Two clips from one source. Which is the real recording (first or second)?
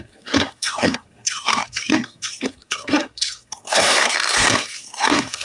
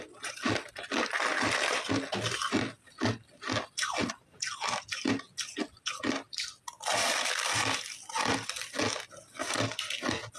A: second